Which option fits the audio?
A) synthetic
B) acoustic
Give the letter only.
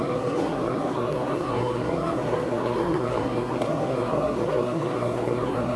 A